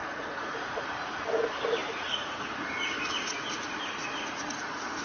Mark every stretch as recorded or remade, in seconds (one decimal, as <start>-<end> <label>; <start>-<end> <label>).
0.0-5.0 remade